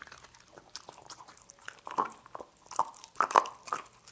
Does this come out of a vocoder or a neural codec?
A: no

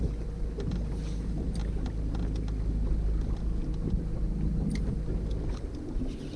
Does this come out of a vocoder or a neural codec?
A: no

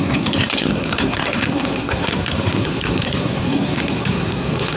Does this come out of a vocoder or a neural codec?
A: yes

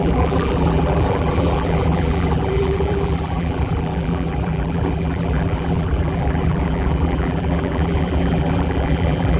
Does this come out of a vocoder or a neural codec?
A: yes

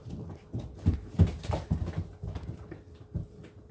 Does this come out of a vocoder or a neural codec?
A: no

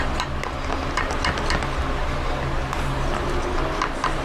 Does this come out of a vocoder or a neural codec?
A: no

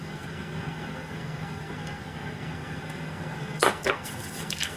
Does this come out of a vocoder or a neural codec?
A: yes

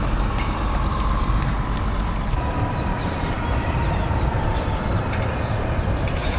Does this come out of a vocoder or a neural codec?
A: yes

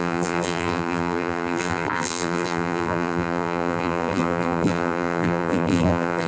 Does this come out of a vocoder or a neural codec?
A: yes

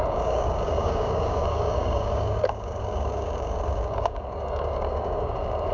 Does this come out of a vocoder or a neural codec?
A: yes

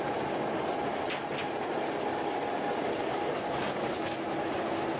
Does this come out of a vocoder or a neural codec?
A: no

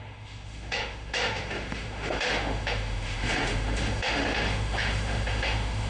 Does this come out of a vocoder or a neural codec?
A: yes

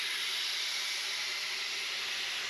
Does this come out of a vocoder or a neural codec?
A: no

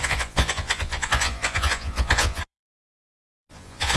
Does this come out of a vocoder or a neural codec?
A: yes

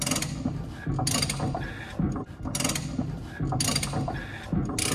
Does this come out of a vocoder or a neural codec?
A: no